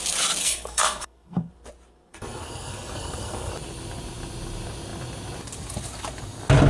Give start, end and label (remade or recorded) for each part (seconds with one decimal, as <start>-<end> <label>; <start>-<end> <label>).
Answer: 0.0-0.4 recorded; 0.4-1.5 remade; 1.5-2.1 recorded; 2.1-3.5 remade; 3.5-6.7 recorded